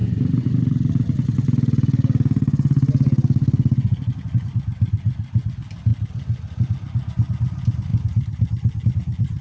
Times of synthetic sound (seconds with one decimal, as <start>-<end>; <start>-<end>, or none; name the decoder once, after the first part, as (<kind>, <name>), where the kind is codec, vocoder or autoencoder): none